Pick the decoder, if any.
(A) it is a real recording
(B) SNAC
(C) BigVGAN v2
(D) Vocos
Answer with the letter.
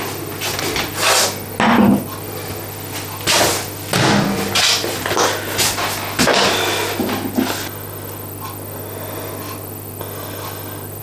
A